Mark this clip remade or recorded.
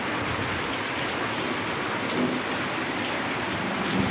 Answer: recorded